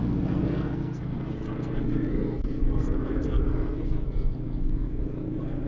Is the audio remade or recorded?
remade